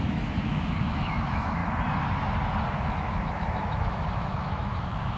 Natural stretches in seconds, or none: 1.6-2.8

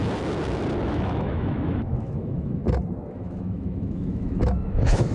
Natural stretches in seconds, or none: 0.0-0.8; 2.6-3.1

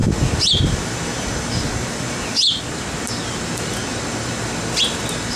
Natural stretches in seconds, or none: 0.0-5.4

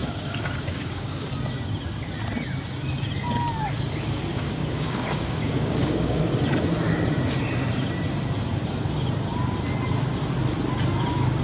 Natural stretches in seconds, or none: 1.3-4.3; 6.2-11.4

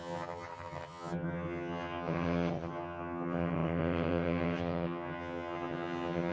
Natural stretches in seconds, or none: none

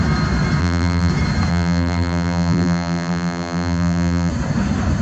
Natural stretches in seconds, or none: 0.0-0.6; 1.1-1.5; 4.3-5.0